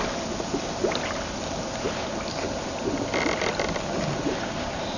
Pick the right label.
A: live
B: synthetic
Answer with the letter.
A